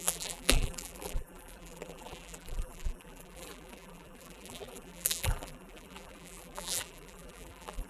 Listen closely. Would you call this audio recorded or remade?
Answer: remade